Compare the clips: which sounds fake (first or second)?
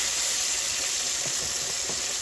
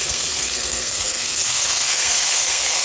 second